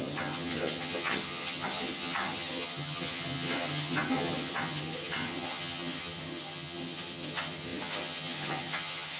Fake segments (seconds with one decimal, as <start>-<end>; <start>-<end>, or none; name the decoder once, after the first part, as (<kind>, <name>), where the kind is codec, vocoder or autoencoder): 0.0-9.2 (vocoder, HiFi-GAN)